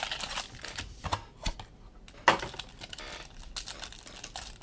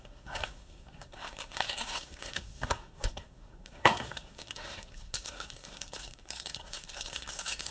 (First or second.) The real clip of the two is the first